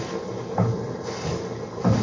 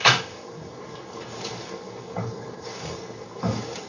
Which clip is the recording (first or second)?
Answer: first